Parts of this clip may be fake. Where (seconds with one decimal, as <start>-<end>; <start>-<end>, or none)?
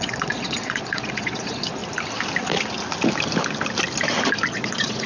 0.0-1.8; 4.5-5.1